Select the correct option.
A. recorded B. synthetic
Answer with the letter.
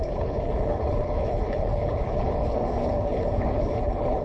B